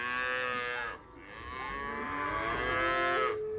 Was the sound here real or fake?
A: real